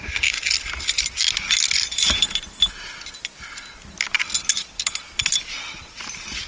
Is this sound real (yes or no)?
yes